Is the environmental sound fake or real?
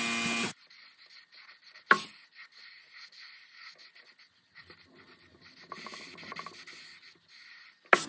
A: real